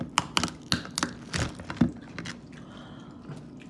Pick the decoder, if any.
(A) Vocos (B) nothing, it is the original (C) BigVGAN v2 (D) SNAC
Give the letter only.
B